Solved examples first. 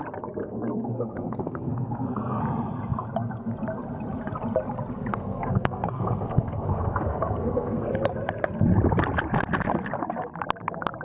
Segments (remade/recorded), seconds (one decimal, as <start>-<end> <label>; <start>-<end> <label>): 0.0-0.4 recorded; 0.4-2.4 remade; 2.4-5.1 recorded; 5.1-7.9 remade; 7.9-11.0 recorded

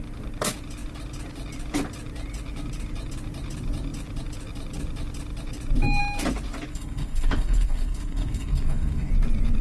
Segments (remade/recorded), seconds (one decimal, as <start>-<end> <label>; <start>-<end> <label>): 0.0-6.7 recorded; 6.7-9.1 remade; 9.1-9.6 recorded

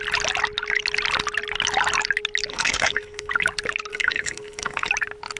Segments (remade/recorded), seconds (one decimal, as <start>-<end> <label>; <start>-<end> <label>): 0.0-2.5 recorded; 2.5-3.3 remade; 3.3-3.9 recorded; 3.9-4.9 remade; 4.9-5.4 recorded